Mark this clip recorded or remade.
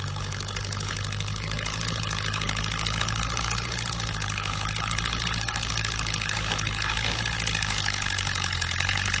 remade